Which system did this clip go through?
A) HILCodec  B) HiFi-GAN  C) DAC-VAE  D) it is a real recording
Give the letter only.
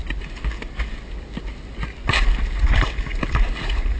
D